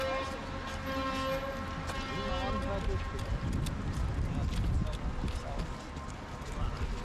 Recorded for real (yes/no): yes